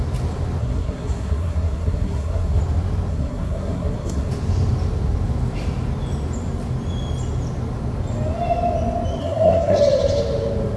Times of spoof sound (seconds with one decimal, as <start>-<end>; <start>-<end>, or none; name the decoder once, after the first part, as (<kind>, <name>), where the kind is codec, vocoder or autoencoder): 0.6-2.6 (codec, SNAC); 3.1-4.3; 9.2-9.8